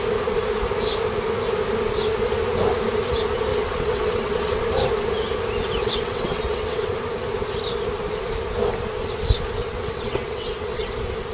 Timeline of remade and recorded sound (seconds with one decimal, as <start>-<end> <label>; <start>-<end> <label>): 0.0-3.5 recorded; 3.5-4.6 remade; 4.6-5.8 recorded; 5.8-6.9 remade; 6.9-9.6 recorded; 9.6-10.8 remade; 10.8-11.3 recorded